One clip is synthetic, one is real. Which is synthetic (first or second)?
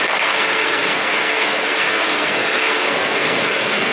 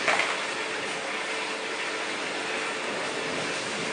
first